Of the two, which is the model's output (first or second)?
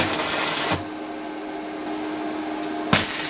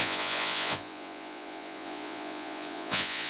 second